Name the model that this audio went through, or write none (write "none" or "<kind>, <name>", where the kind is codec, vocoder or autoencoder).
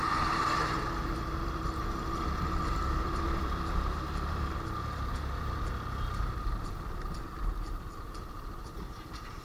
vocoder, BigVGAN v2